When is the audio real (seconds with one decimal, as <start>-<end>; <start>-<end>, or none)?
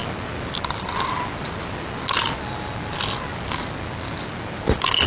0.0-5.1